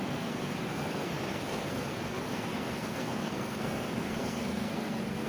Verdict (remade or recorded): remade